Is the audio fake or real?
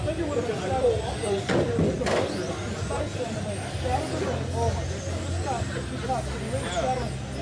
real